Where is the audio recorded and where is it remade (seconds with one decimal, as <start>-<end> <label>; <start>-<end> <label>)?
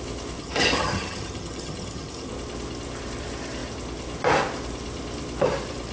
0.0-0.4 recorded; 0.4-2.3 remade; 2.3-5.9 recorded